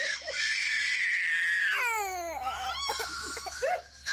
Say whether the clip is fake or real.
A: fake